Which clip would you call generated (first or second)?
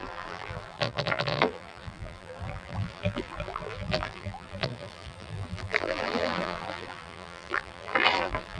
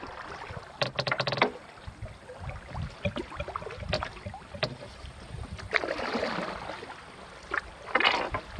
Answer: first